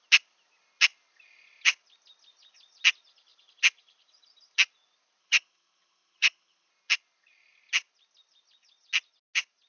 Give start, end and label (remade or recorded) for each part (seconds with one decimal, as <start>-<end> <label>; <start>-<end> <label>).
0.0-5.2 recorded; 5.2-6.7 remade; 6.7-9.7 recorded